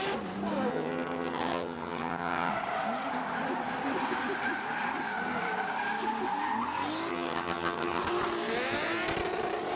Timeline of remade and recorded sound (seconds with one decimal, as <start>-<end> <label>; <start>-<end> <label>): 0.0-0.7 recorded; 0.7-2.5 remade; 2.5-7.1 recorded; 7.1-8.0 remade; 8.0-9.8 recorded